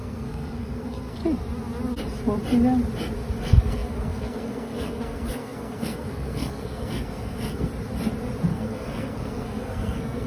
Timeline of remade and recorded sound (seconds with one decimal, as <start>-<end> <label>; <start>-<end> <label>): 0.0-1.2 remade; 1.2-3.4 recorded; 3.4-7.7 remade; 7.7-8.5 recorded; 8.5-10.3 remade